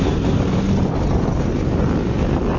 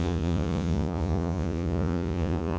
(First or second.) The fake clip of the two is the second